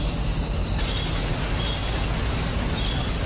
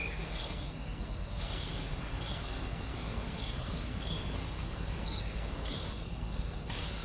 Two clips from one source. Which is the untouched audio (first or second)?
first